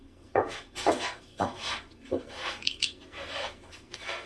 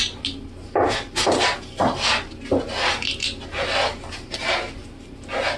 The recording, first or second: second